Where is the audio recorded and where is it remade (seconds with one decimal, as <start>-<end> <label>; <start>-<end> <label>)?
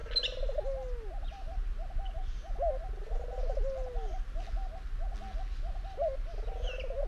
0.0-7.1 recorded